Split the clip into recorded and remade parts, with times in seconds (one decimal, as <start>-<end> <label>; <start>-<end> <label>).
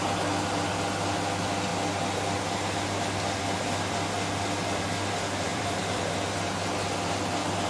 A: 0.0-5.5 recorded; 5.5-6.1 remade; 6.1-7.7 recorded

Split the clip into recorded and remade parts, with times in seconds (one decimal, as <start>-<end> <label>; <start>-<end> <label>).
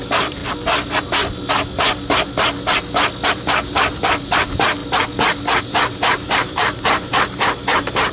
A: 0.0-0.4 remade; 0.4-3.3 recorded; 3.3-4.8 remade; 4.8-5.6 recorded; 5.6-8.1 remade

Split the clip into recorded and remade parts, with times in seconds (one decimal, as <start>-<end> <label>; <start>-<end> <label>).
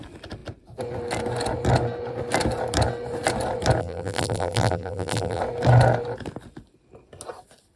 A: 0.0-3.8 recorded; 3.8-5.4 remade; 5.4-7.8 recorded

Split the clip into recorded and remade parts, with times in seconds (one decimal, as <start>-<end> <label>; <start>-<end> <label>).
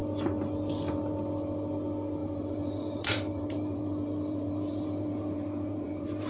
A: 0.0-2.2 recorded; 2.2-6.3 remade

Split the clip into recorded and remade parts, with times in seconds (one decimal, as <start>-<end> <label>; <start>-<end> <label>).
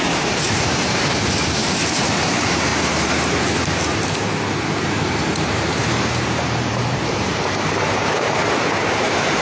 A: 0.0-8.4 remade; 8.4-8.9 recorded; 8.9-9.4 remade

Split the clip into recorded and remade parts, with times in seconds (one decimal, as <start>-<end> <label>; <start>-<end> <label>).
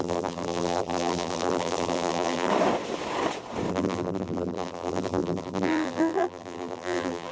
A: 0.0-2.5 remade; 2.5-3.7 recorded; 3.7-7.3 remade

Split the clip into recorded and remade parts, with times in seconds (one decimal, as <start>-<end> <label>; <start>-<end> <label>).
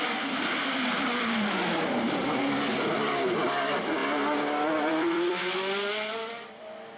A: 0.0-4.0 remade; 4.0-4.9 recorded; 4.9-7.0 remade